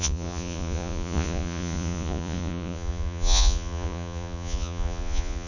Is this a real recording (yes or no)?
no